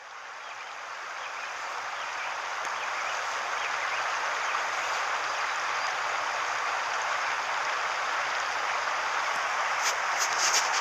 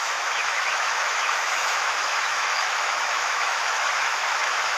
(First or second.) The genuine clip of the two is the first